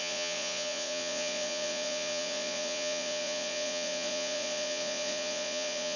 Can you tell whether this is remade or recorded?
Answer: remade